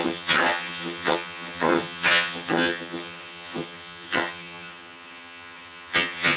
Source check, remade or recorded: remade